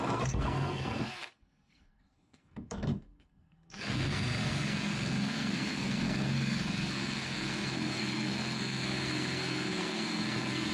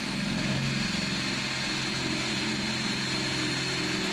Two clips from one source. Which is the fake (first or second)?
first